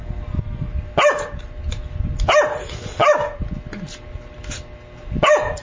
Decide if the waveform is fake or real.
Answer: real